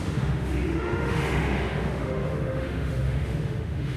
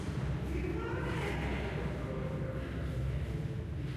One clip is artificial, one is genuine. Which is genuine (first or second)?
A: second